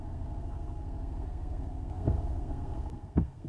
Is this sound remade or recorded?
remade